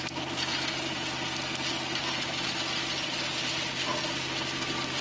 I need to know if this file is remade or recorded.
recorded